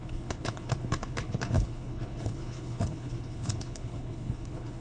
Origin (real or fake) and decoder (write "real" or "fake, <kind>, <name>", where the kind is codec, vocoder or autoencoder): fake, codec, HILCodec